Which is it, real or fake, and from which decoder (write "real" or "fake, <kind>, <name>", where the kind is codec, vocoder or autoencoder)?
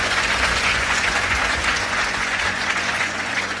fake, vocoder, Vocos